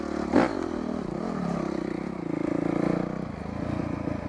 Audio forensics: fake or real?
real